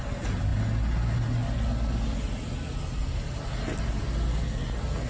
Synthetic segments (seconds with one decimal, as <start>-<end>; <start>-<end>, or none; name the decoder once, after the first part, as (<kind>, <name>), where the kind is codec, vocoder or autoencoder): none